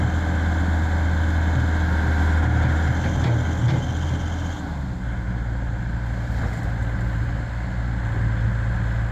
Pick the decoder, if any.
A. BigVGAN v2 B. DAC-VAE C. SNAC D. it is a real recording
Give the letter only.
D